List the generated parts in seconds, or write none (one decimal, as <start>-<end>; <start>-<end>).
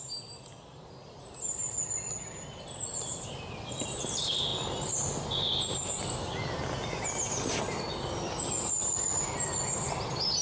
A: none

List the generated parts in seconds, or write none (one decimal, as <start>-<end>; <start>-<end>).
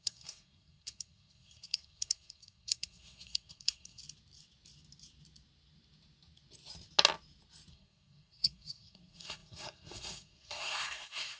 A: 0.0-4.0; 7.7-11.4